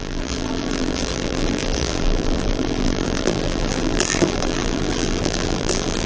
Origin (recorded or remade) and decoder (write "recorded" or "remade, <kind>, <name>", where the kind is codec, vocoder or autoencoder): remade, vocoder, BigVGAN v2